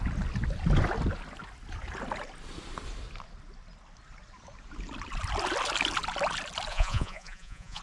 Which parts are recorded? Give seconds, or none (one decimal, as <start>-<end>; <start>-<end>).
0.0-6.7